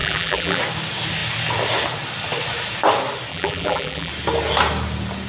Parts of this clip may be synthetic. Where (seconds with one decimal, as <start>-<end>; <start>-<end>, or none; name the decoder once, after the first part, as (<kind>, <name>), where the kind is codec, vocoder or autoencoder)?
0.0-0.6 (vocoder, BigVGAN v2); 3.3-4.1